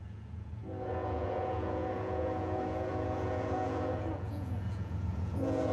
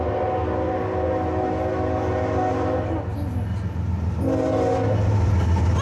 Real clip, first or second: second